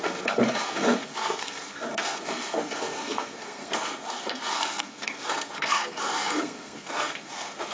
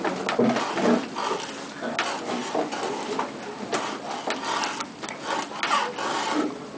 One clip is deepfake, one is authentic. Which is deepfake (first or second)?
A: first